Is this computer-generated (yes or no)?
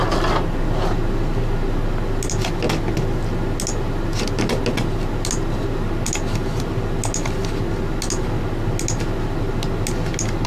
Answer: no